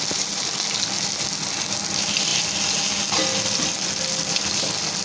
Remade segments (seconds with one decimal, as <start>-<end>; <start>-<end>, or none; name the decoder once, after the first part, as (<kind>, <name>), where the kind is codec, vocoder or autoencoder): none